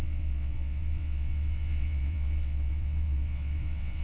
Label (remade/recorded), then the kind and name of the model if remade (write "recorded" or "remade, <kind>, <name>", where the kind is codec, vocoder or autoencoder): remade, vocoder, WaveNeXt